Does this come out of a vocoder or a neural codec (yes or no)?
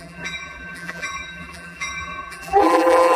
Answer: yes